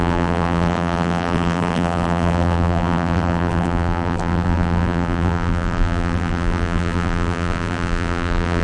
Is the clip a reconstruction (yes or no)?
yes